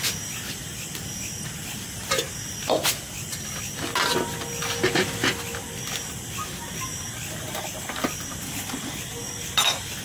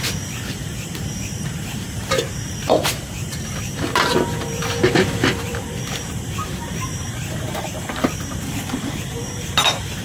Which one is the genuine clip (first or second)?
first